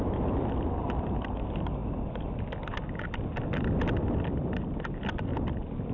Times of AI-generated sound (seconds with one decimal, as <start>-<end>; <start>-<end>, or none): none